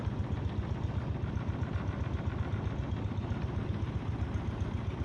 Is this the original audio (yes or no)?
yes